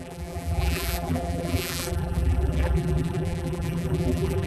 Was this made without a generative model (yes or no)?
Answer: no